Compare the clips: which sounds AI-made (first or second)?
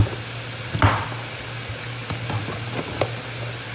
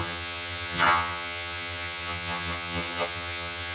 second